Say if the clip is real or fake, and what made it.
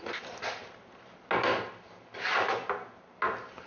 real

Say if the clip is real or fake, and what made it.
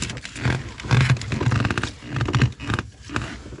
real